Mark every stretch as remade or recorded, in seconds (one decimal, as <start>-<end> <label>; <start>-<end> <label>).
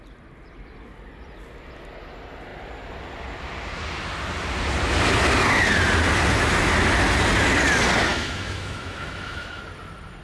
0.0-8.1 recorded; 8.1-9.6 remade; 9.6-10.2 recorded